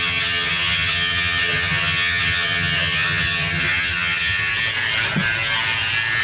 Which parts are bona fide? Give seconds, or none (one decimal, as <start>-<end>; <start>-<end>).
4.5-6.2